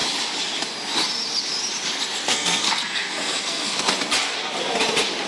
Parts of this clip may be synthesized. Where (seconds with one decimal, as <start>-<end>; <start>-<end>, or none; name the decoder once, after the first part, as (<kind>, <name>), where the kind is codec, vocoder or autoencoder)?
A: 2.2-3.9 (codec, SNAC)